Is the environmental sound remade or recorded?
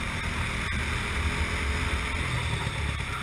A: recorded